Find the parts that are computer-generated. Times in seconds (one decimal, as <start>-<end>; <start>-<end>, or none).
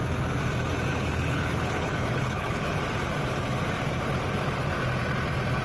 0.9-2.8